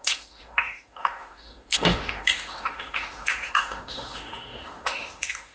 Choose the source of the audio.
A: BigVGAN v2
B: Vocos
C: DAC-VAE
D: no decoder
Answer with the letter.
C